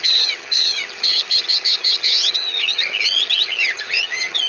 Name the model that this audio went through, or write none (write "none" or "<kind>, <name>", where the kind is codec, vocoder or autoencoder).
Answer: vocoder, HiFi-GAN